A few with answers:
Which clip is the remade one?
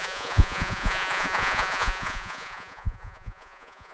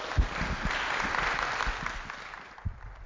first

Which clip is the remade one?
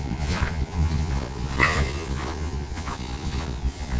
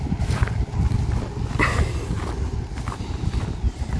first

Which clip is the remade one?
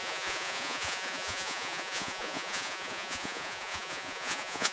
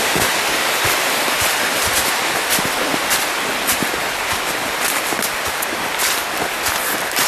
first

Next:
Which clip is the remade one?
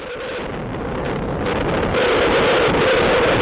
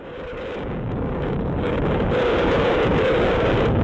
second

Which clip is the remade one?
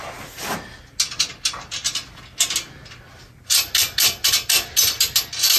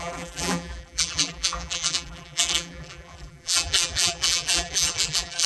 second